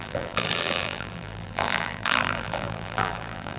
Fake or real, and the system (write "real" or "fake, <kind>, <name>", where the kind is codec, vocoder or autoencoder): fake, vocoder, BigVGAN v2